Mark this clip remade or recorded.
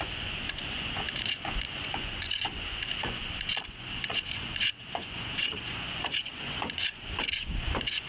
remade